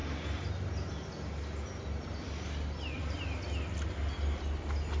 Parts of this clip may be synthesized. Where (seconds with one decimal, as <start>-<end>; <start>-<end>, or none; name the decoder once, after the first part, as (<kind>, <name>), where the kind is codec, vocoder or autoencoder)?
none